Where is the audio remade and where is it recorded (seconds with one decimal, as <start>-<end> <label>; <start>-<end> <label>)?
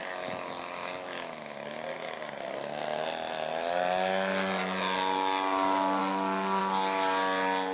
0.0-7.7 recorded